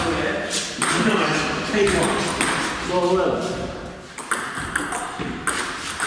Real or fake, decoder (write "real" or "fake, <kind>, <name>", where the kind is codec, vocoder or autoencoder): real